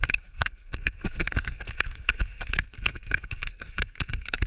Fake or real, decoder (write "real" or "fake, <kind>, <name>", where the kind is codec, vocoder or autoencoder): fake, codec, SNAC